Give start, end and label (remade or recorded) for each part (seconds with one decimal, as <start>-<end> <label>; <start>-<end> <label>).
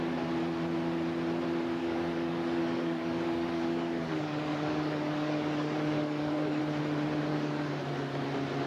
0.0-1.8 recorded; 1.8-6.6 remade; 6.6-7.3 recorded; 7.3-7.8 remade; 7.8-8.7 recorded